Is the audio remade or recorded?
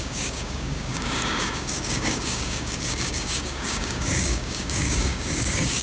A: remade